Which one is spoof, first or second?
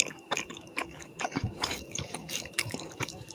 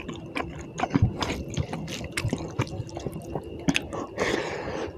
first